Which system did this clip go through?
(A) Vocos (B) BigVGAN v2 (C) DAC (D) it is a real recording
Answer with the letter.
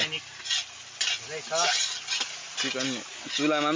D